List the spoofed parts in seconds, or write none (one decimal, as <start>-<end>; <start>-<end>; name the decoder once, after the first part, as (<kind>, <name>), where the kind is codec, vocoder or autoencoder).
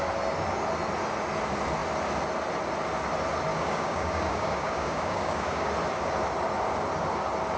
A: 3.5-5.7 (codec, DAC)